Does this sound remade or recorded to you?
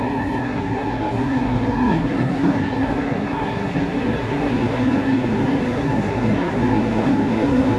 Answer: remade